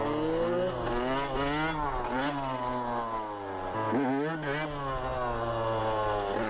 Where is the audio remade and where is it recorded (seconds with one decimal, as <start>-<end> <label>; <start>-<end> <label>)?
0.0-6.5 recorded